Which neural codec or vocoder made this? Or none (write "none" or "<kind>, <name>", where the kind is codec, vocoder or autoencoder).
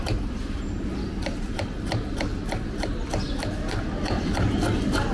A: none